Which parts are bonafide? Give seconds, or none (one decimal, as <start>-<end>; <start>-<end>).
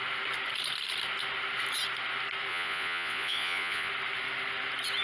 0.0-2.5; 3.9-5.0